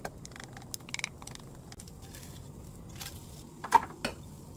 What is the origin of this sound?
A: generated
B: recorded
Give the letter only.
B